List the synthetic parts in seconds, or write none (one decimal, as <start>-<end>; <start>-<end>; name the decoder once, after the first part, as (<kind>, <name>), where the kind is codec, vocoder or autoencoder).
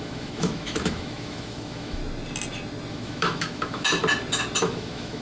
0.0-2.0 (autoencoder, DAC-VAE); 2.9-4.0; 4.6-5.2